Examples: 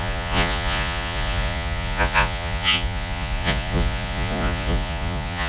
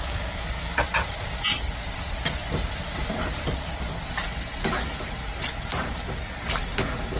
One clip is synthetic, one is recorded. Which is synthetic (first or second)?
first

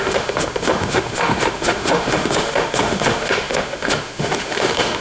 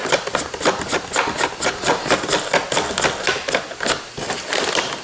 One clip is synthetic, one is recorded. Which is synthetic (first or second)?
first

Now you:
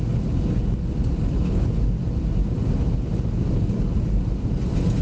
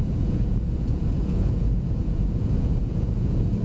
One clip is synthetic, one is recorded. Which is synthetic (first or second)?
second